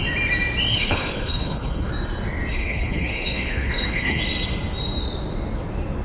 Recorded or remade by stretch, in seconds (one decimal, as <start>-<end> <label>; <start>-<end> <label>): 0.0-0.7 recorded; 0.7-1.9 remade; 1.9-2.5 recorded; 2.5-4.2 remade; 4.2-6.0 recorded